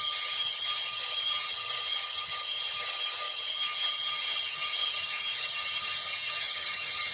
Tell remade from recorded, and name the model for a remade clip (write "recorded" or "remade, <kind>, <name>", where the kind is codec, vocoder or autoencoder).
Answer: remade, vocoder, HiFi-GAN